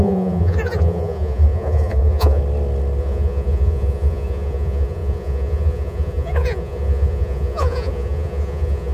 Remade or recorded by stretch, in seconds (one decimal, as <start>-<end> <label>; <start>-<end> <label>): 0.0-2.4 remade; 2.4-3.0 recorded; 3.0-8.9 remade